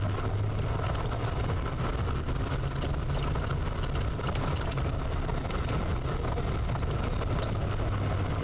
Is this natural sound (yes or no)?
yes